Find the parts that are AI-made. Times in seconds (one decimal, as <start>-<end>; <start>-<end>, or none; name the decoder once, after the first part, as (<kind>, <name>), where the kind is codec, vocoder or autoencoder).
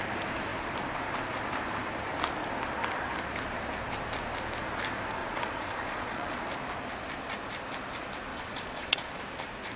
5.2-6.4 (vocoder, Vocos); 8.3-9.2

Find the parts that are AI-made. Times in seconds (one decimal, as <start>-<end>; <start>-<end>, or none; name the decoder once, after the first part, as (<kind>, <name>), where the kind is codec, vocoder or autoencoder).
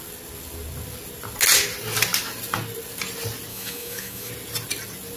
3.5-4.3 (autoencoder, DAC-VAE)